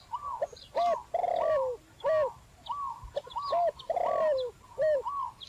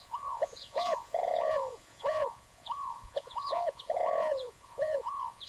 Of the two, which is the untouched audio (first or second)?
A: first